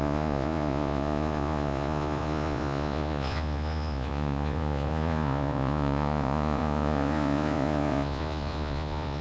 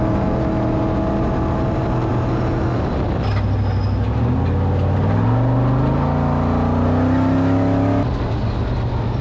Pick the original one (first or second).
second